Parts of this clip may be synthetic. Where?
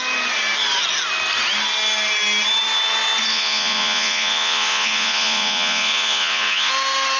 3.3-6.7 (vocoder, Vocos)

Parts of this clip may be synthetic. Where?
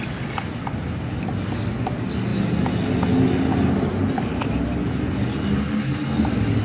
none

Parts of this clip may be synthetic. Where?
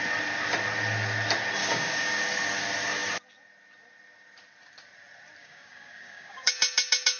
1.6-2.2 (codec, DAC); 5.4-6.5